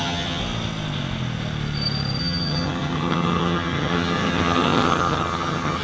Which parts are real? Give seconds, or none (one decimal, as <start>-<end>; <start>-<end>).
0.4-2.2